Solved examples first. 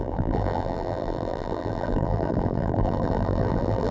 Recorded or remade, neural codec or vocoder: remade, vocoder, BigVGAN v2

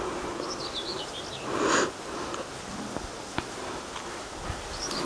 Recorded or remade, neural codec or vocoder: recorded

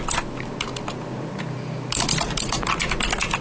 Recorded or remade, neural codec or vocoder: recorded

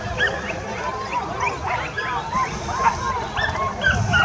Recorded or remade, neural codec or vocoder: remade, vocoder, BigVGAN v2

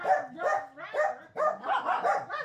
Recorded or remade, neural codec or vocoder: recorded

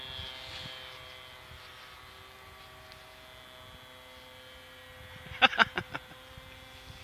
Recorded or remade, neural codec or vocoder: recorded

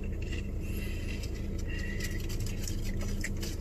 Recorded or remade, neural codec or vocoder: recorded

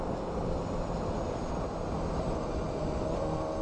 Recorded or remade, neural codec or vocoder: recorded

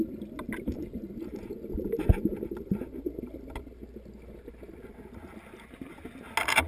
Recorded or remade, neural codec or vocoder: recorded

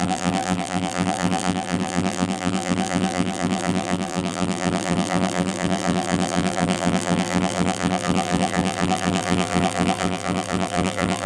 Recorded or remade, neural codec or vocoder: remade, vocoder, BigVGAN v2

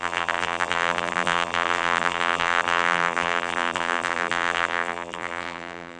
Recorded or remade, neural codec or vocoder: remade, vocoder, BigVGAN v2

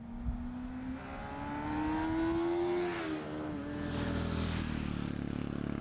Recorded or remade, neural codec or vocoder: recorded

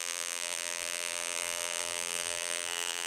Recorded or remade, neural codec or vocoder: remade, vocoder, BigVGAN v2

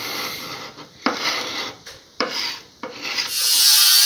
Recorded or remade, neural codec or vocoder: remade, vocoder, BigVGAN v2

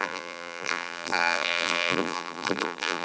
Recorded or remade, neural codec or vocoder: remade, vocoder, BigVGAN v2